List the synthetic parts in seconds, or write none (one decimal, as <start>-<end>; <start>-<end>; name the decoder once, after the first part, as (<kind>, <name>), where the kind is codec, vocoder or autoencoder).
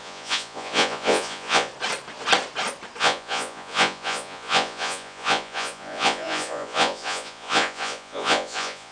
0.0-1.7 (vocoder, Vocos); 3.0-8.9